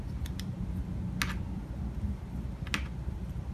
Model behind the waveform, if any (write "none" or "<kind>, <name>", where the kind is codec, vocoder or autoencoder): none